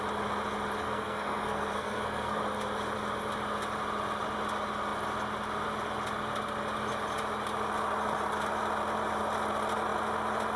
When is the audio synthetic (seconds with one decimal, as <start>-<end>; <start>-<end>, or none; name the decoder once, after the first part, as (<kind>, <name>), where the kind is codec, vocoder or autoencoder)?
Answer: 0.8-2.4 (codec, SNAC)